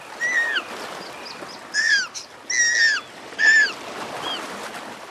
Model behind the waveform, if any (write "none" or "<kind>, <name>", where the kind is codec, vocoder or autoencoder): none